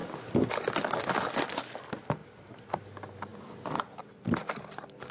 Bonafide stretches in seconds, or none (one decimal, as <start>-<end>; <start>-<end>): 0.0-5.1